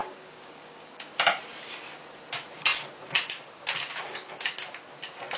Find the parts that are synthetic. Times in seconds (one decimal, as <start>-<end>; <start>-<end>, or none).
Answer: 0.0-1.1